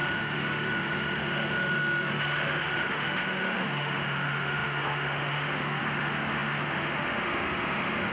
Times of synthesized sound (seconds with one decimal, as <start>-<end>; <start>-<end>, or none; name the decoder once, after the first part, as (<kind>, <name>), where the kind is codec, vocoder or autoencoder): 0.0-8.1 (autoencoder, DAC-VAE)